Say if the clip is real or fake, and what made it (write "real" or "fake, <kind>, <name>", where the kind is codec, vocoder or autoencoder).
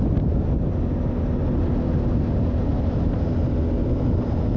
real